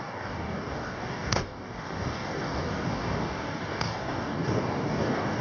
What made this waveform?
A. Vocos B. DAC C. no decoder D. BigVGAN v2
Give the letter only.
B